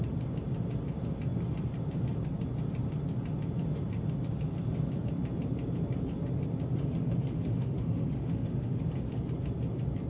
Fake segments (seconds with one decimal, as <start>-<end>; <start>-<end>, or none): 6.7-8.8